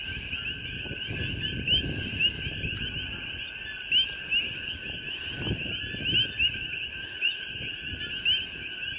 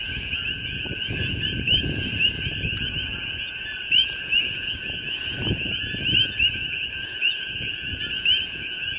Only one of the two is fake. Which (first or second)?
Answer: second